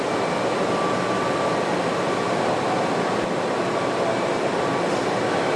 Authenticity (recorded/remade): recorded